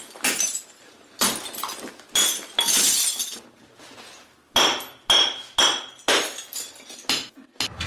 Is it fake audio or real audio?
real